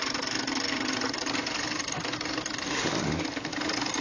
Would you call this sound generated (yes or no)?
no